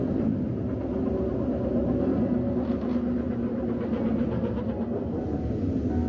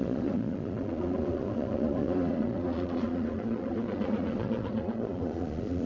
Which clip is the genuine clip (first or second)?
first